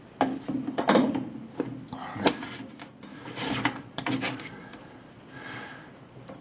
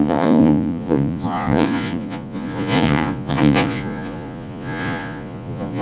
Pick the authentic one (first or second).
first